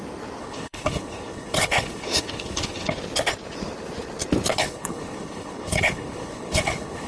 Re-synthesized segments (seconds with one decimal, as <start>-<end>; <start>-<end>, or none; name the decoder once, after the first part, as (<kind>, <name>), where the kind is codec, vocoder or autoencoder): 0.4-3.0 (codec, HILCodec); 4.5-7.1